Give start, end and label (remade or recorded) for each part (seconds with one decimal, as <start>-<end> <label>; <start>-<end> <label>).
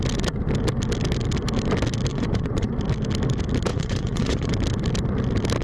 0.0-2.1 recorded; 2.1-2.7 remade; 2.7-3.7 recorded; 3.7-4.5 remade; 4.5-5.6 recorded